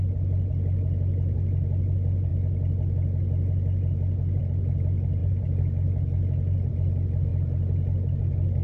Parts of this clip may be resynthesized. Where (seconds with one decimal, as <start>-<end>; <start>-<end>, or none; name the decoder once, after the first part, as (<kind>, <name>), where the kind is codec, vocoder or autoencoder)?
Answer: none

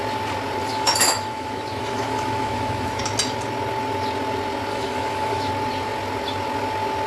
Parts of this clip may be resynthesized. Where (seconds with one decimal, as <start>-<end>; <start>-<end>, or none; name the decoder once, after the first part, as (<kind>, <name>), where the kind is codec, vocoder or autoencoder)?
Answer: 0.7-3.0 (autoencoder, DAC-VAE); 4.7-5.5